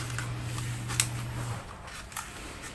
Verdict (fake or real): real